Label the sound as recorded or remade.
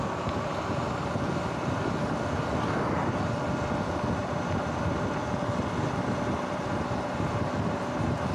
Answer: recorded